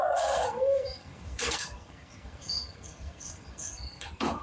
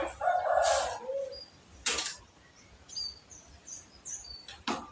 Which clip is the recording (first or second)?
second